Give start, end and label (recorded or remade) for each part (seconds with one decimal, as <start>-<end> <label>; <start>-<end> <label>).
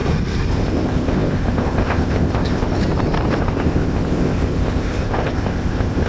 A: 0.0-0.5 recorded; 0.5-2.7 remade; 2.7-3.4 recorded; 3.4-6.1 remade